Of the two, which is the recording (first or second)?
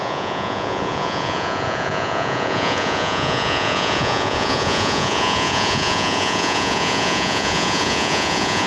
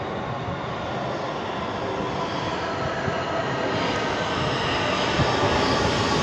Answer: second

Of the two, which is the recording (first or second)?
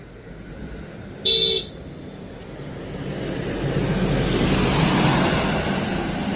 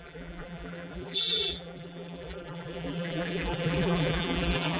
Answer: first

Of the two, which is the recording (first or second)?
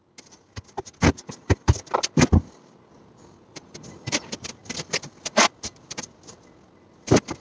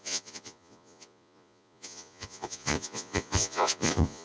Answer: first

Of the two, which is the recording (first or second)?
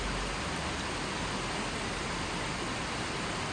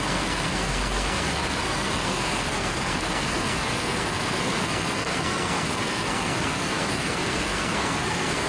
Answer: first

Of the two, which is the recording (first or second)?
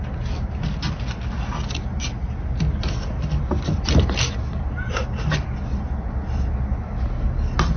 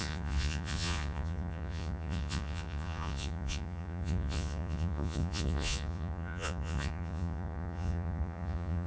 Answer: first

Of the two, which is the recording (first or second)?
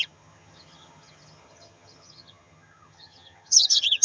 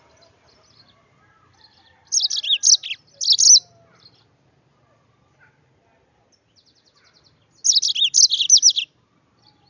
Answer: second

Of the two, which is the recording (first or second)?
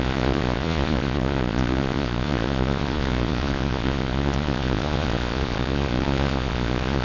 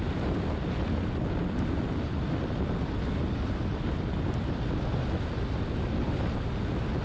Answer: second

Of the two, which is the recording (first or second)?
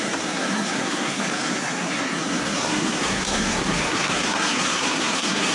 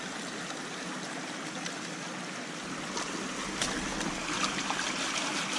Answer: second